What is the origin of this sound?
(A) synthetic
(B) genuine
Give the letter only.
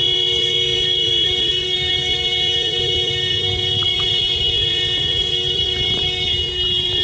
B